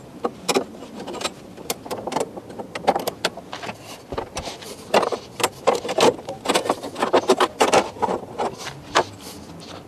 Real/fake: real